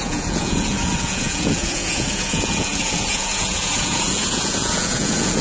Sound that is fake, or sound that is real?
fake